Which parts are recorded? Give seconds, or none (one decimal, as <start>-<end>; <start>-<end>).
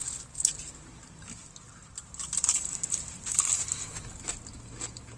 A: 0.0-2.0; 3.5-5.2